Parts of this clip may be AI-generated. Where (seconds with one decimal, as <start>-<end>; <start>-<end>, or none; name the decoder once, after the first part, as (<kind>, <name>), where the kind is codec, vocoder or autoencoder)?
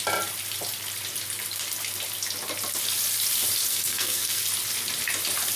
3.7-4.4 (codec, SNAC)